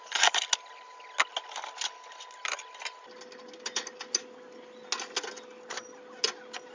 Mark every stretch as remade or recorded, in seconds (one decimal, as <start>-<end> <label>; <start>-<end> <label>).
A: 0.0-6.7 recorded